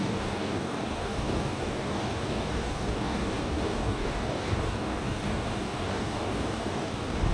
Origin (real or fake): fake